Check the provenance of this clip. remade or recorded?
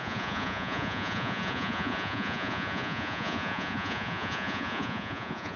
remade